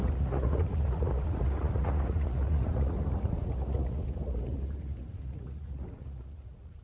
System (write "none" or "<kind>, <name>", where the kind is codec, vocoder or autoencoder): vocoder, Vocos